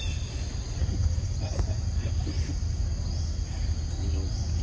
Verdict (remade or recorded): recorded